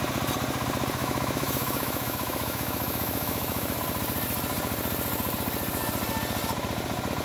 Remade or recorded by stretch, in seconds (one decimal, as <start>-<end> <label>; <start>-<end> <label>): 0.0-1.0 recorded; 1.0-3.8 remade; 3.8-7.2 recorded